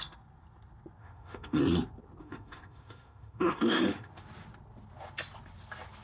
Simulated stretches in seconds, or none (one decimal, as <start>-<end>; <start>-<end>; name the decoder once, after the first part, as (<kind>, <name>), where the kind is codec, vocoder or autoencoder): 1.0-1.6 (autoencoder, DAC-VAE); 2.2-4.1